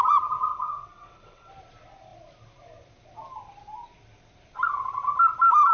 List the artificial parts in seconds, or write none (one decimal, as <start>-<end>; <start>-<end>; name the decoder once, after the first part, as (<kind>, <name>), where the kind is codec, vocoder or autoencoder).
0.5-1.5 (vocoder, WaveNeXt)